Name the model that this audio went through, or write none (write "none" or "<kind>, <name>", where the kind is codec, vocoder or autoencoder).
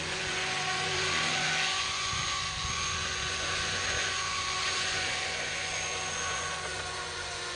vocoder, Vocos